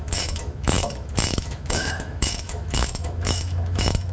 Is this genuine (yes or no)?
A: no